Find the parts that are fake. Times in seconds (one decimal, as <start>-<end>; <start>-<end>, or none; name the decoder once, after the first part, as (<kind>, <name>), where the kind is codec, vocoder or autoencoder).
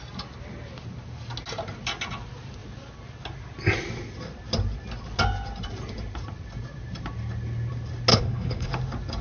8.1-8.7 (codec, HILCodec)